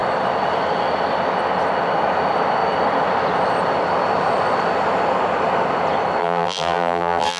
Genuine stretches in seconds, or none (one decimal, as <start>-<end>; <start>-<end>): 0.0-6.2